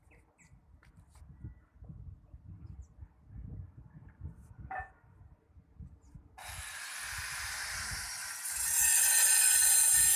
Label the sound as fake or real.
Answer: real